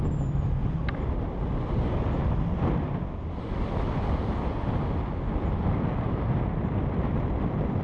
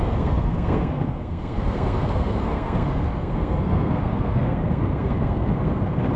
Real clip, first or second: first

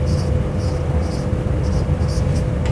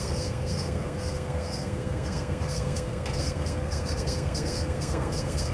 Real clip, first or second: first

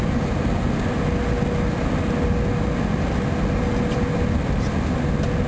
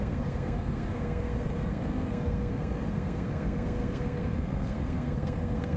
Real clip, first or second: first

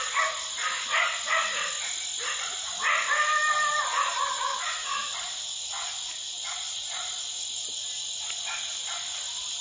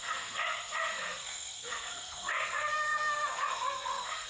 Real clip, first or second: first